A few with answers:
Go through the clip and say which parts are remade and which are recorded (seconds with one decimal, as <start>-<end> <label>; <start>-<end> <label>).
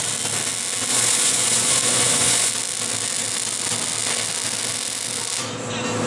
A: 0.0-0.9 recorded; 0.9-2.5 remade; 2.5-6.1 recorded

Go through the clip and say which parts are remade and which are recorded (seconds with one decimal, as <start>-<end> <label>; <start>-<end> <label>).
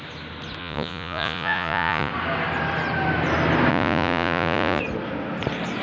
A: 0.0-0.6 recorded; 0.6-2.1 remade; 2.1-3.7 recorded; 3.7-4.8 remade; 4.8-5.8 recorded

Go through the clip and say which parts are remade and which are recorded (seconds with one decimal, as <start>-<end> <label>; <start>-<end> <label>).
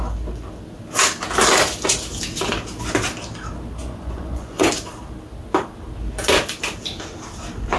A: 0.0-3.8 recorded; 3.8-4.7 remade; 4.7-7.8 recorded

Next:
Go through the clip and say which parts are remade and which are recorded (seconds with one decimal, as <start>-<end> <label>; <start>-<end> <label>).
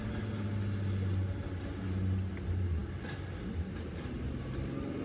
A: 0.0-5.0 recorded